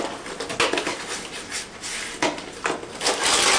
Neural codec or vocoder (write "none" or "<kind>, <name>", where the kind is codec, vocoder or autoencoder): none